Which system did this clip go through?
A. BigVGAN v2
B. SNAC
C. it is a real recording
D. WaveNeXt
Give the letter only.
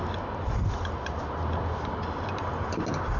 C